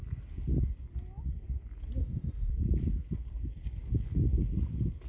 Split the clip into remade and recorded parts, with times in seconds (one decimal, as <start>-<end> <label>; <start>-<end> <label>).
0.0-2.0 recorded; 2.0-2.5 remade; 2.5-5.1 recorded